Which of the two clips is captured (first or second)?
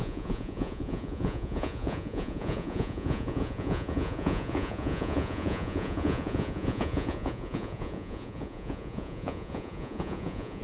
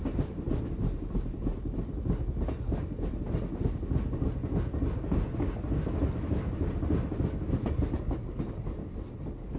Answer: second